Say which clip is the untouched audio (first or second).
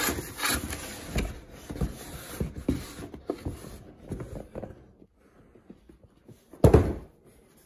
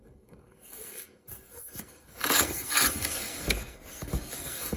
first